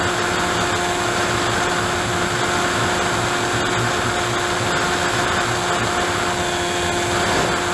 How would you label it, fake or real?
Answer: real